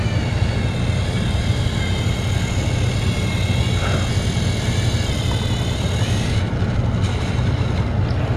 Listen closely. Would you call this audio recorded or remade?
recorded